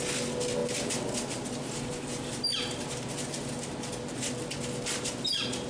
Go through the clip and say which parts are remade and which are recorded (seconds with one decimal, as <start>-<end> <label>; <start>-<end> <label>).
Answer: 0.0-5.7 recorded